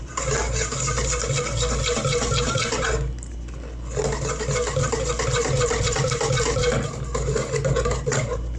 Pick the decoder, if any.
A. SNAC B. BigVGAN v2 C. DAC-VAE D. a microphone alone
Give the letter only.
D